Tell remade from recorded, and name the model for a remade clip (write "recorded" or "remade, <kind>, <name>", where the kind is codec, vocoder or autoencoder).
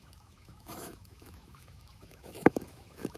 remade, autoencoder, DAC-VAE